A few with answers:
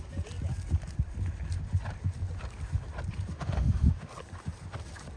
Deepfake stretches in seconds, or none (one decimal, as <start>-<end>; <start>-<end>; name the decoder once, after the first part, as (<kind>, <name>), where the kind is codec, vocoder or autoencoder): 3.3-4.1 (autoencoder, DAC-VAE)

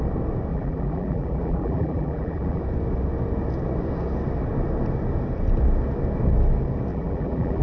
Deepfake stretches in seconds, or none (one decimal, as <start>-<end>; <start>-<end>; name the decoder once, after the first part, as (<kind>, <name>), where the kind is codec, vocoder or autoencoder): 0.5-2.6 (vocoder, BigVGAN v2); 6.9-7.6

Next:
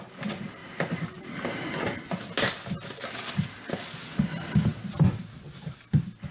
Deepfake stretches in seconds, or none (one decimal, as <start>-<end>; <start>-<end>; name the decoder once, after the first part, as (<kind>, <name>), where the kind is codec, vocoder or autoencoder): none

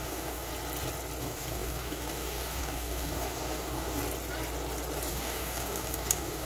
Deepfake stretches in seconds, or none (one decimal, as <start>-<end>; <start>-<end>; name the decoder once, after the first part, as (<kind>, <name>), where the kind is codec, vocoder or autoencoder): 0.0-0.5 (codec, DAC); 1.2-4.0; 5.1-6.5

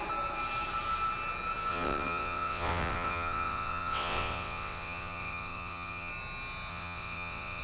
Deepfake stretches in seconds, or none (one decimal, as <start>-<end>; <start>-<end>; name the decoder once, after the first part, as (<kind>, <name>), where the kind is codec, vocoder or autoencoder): 1.7-6.1 (vocoder, WaveNeXt); 6.7-7.6

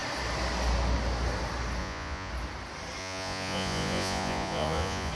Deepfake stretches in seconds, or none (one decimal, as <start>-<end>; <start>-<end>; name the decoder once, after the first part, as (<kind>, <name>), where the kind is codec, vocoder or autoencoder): 1.8-2.3 (vocoder, Vocos); 3.0-5.1

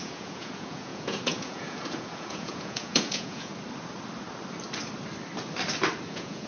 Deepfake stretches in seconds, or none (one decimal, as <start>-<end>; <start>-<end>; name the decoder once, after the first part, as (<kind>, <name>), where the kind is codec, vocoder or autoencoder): 0.0-3.5 (vocoder, Vocos); 6.1-6.5

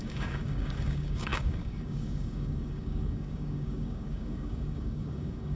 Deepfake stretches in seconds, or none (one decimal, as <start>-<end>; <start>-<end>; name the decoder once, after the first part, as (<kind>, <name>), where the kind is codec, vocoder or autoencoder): 0.0-5.6 (codec, DAC)